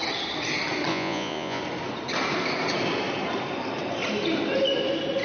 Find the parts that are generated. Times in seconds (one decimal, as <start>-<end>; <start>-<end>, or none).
0.9-1.6